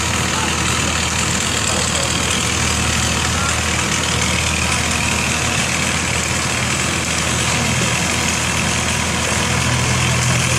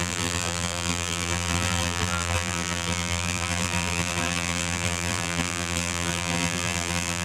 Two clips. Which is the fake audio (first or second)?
second